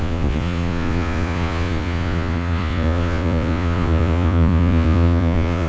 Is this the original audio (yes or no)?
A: no